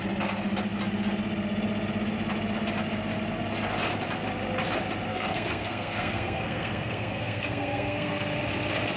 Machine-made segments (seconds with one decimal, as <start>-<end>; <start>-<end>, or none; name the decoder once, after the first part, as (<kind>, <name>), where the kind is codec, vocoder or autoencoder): 5.1-8.4 (codec, SNAC)